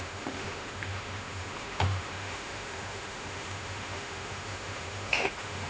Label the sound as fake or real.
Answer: fake